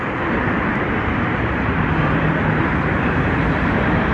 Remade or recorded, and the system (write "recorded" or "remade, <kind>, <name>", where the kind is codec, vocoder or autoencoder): remade, vocoder, BigVGAN v2